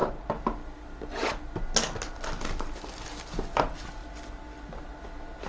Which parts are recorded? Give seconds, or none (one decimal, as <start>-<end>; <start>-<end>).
0.0-5.5